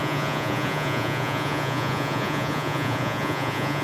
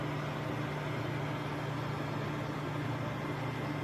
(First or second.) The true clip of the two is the second